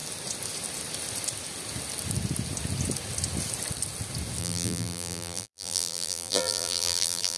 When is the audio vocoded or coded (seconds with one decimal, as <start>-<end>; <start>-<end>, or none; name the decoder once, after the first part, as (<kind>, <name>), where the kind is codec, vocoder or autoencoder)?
4.4-7.4 (vocoder, BigVGAN v2)